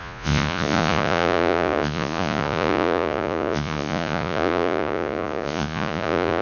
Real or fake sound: fake